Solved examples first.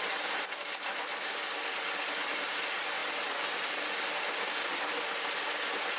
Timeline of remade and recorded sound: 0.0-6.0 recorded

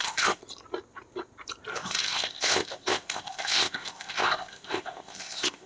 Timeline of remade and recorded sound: 0.0-0.4 remade; 0.4-1.7 recorded; 1.7-5.7 remade